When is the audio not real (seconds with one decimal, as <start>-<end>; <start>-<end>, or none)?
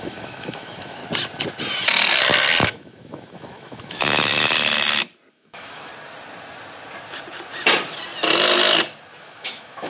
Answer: 0.0-1.0; 2.6-4.3; 5.3-5.9; 9.2-9.9